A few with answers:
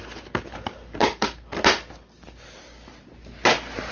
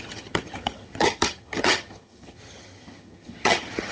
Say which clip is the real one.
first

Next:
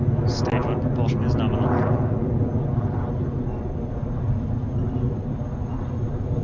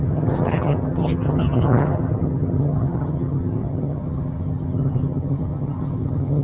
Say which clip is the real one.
first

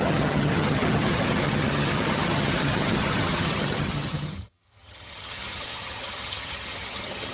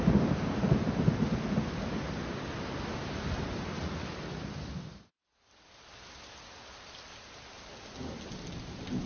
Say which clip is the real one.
second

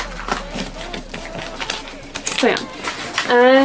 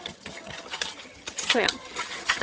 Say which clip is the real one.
first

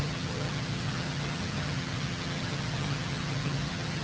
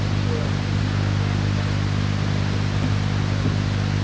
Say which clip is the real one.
second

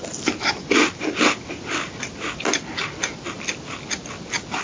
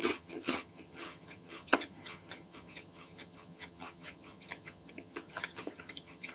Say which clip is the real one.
first